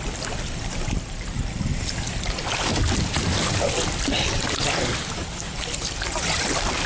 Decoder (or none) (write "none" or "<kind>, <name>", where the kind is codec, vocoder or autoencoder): none